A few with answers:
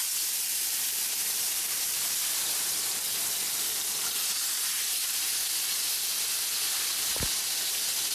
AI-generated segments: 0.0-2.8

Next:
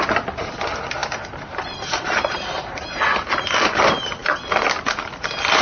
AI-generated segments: none